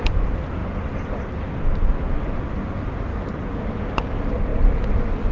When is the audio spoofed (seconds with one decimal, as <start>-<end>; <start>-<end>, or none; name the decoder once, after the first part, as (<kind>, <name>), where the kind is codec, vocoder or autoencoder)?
3.1-3.6 (vocoder, BigVGAN v2)